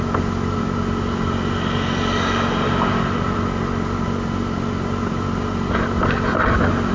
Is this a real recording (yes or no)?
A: yes